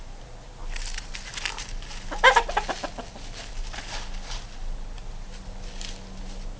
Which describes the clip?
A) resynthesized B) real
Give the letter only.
B